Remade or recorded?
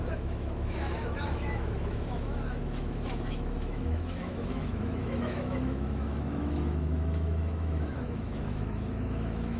remade